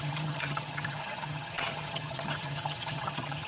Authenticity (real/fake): fake